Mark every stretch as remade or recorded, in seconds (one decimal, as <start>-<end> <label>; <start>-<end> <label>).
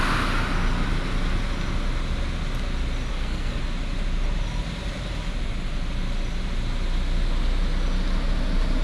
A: 0.0-3.1 recorded; 3.1-3.6 remade; 3.6-8.8 recorded